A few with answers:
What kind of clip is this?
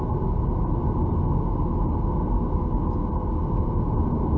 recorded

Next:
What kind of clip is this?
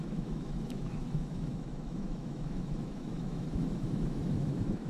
remade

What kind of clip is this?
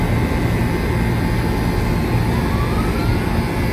recorded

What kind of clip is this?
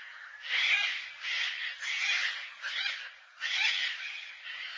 recorded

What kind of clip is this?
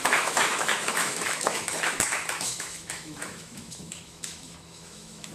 remade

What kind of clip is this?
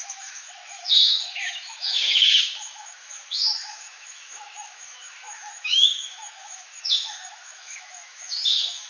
remade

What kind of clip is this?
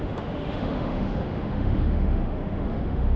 remade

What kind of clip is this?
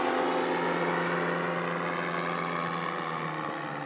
recorded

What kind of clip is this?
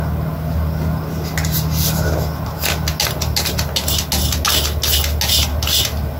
recorded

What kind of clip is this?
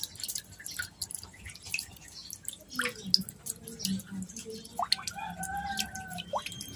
recorded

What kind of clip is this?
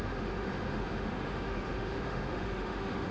remade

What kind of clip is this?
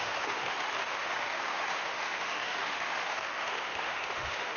remade